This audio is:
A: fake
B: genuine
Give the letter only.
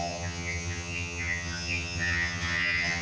A